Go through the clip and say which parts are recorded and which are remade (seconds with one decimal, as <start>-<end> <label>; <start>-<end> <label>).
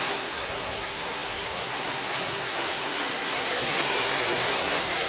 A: 0.0-5.1 remade